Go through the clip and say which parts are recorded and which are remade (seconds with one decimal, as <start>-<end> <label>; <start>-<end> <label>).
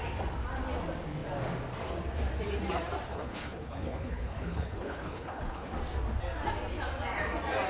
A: 0.0-3.1 recorded; 3.1-5.7 remade; 5.7-7.7 recorded